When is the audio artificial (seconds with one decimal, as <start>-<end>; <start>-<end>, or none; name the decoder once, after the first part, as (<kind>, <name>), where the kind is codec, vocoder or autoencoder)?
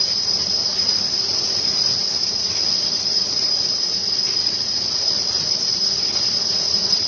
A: none